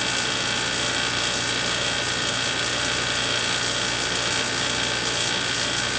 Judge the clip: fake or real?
real